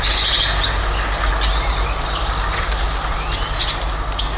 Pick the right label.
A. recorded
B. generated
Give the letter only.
B